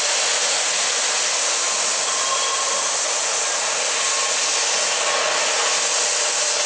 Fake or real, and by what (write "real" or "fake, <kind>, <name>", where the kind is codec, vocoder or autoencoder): real